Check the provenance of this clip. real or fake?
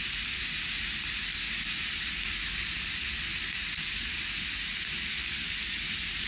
real